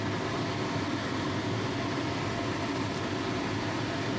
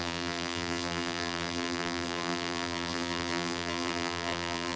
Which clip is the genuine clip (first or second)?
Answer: first